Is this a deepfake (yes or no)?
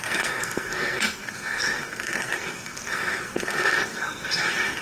yes